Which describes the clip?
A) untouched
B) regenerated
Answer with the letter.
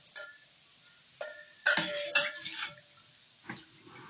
A